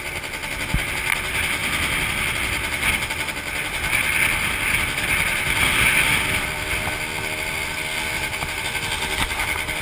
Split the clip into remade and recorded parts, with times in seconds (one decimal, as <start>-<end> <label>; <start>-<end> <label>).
0.0-9.8 recorded